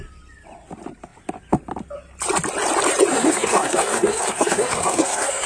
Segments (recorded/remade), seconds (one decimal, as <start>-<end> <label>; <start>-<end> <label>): 0.0-3.1 recorded; 3.1-5.5 remade